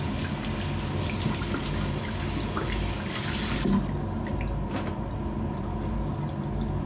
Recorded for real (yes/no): yes